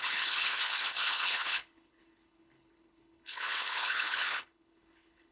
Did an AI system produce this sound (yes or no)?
yes